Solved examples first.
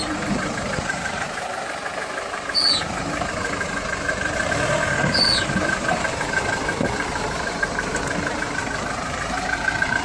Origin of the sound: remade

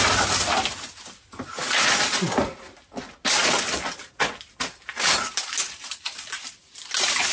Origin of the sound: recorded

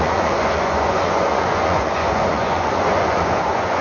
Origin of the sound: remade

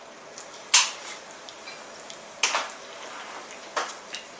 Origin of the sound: recorded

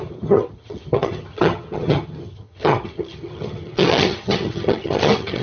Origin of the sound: remade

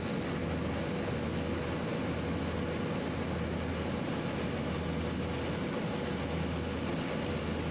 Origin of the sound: recorded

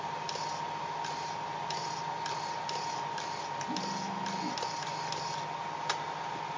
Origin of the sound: recorded